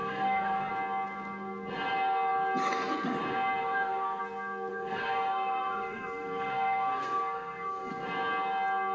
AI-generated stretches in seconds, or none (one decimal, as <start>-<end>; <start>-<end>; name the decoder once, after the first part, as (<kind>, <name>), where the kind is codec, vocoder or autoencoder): 0.0-0.7 (codec, SNAC); 3.6-4.2; 4.7-7.9